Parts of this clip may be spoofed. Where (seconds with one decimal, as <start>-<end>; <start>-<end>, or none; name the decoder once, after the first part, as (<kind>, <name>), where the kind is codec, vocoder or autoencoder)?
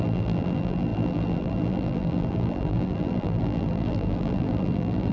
0.0-5.1 (vocoder, BigVGAN v2)